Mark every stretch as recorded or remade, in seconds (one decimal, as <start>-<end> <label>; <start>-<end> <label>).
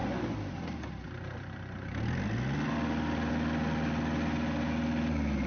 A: 0.0-5.5 recorded